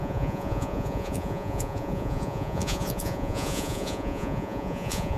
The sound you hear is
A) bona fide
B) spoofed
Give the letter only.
B